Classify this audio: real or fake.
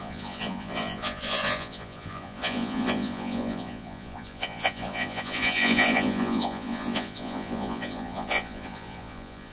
fake